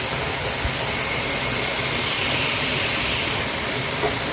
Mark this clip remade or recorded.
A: recorded